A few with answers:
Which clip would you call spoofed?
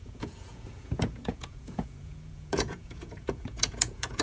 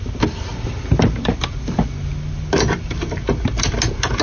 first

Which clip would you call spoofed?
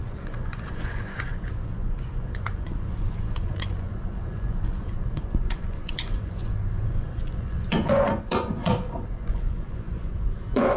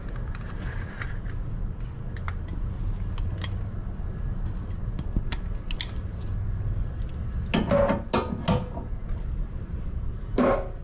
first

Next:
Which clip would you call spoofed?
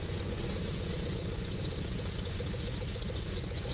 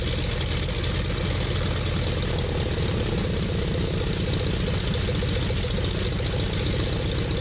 first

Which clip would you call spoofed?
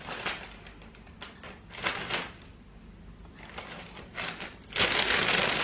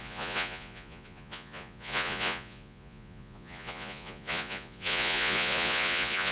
second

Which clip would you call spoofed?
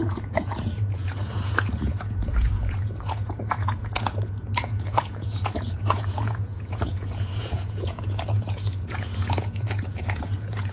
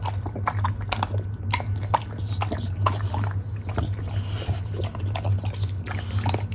first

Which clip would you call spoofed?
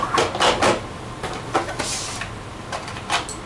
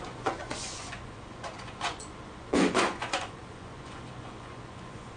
second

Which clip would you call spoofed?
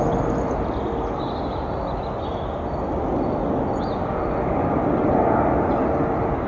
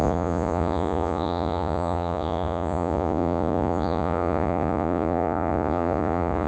second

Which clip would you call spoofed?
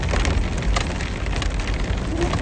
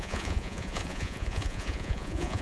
second